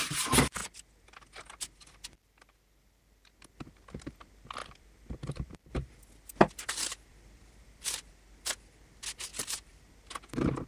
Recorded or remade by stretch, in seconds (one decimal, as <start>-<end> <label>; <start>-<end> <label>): 0.0-4.6 recorded; 4.6-5.6 remade; 5.6-7.1 recorded; 7.1-8.1 remade; 8.1-9.3 recorded; 9.3-9.9 remade; 9.9-10.7 recorded